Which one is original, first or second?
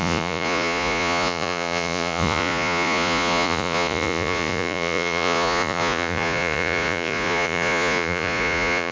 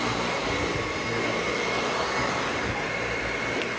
second